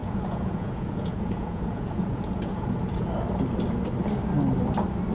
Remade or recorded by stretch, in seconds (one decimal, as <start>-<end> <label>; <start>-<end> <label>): 0.0-3.1 remade; 3.1-5.1 recorded